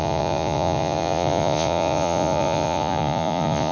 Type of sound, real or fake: fake